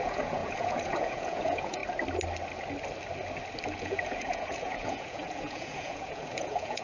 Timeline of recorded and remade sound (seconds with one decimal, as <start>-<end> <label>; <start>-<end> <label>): 0.0-1.8 remade; 1.8-3.8 recorded; 3.8-6.8 remade

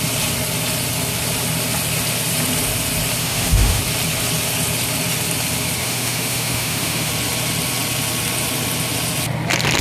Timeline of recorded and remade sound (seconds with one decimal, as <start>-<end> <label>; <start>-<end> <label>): 0.0-3.2 recorded; 3.2-3.8 remade; 3.8-5.8 recorded; 5.8-7.1 remade; 7.1-9.8 recorded

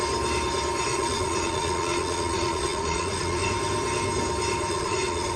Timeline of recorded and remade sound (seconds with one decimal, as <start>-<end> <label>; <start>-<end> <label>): 0.0-0.9 recorded; 0.9-3.5 remade; 3.5-4.7 recorded; 4.7-5.4 remade

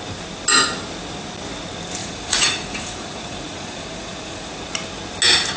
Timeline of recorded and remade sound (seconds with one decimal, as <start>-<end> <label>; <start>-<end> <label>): 0.0-2.0 recorded; 2.0-4.5 remade; 4.5-5.6 recorded

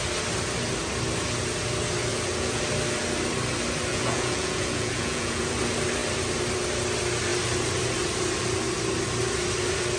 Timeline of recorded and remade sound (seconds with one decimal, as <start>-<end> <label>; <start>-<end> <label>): 0.0-2.1 recorded; 2.1-2.6 remade; 2.6-3.9 recorded; 3.9-5.4 remade; 5.4-10.0 recorded

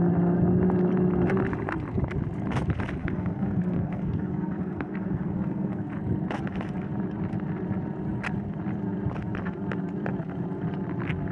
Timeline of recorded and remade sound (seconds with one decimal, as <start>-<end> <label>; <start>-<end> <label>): 0.0-3.0 recorded; 3.0-5.9 remade; 5.9-11.3 recorded

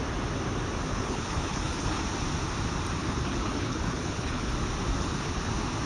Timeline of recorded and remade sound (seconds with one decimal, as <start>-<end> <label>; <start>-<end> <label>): 0.0-0.9 recorded; 0.9-2.0 remade; 2.0-3.0 recorded; 3.0-4.5 remade; 4.5-5.0 recorded; 5.0-5.5 remade; 5.5-5.9 recorded

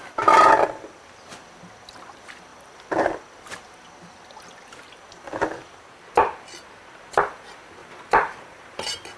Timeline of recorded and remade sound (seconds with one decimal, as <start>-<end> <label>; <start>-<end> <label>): 0.0-2.5 recorded; 2.5-3.1 remade; 3.1-7.8 recorded; 7.8-9.2 remade